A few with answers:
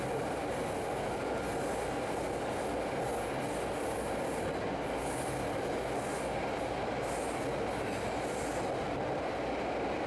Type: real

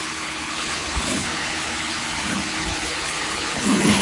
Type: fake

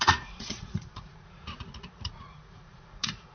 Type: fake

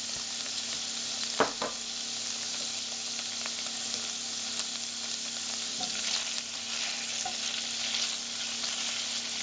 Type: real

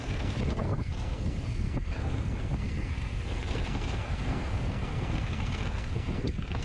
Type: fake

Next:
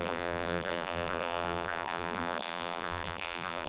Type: fake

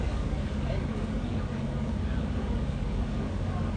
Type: fake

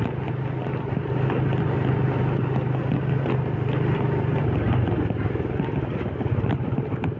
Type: real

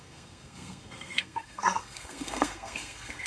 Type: fake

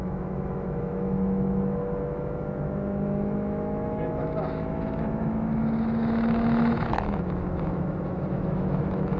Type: fake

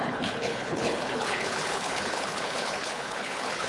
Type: fake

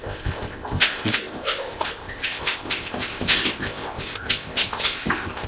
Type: fake